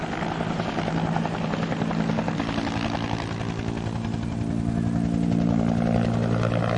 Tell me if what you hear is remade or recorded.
recorded